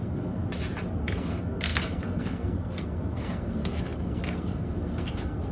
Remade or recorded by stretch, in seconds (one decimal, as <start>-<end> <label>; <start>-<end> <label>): 0.0-0.4 remade; 0.4-1.0 recorded; 1.0-5.5 remade